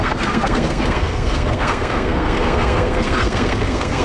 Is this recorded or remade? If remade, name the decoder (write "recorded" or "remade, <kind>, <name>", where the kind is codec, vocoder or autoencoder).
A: remade, codec, SNAC